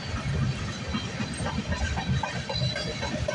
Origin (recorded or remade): recorded